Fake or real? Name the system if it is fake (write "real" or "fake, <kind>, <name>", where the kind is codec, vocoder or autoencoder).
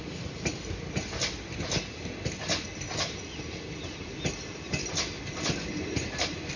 real